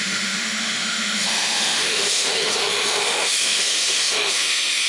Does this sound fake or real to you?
fake